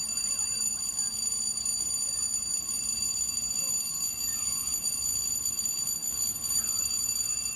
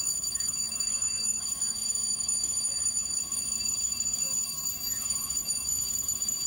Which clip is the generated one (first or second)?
second